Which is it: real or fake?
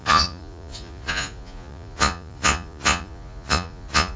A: fake